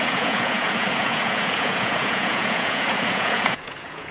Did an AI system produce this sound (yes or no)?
yes